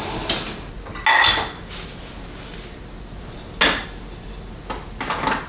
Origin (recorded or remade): recorded